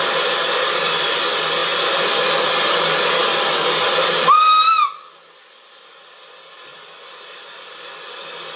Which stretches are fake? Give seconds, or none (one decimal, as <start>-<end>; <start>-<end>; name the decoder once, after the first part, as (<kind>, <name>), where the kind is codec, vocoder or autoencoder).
none